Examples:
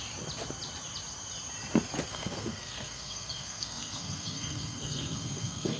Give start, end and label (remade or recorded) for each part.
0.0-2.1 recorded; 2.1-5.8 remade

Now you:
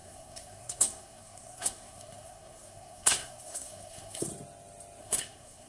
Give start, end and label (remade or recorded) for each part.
0.0-4.3 remade; 4.3-5.0 recorded; 5.0-5.7 remade

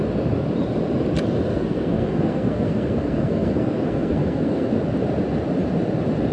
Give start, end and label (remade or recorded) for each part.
0.0-1.5 recorded; 1.5-4.7 remade; 4.7-6.3 recorded

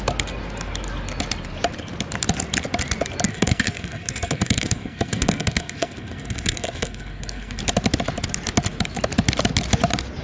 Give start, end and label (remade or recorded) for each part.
0.0-3.3 recorded; 3.3-7.6 remade; 7.6-10.2 recorded